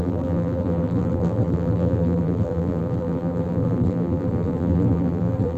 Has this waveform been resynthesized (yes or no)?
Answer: yes